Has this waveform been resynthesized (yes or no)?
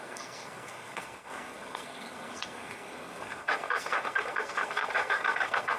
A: yes